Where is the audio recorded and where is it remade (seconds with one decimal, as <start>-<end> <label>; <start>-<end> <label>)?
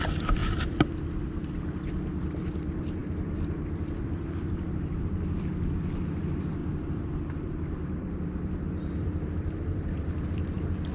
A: 0.0-10.9 remade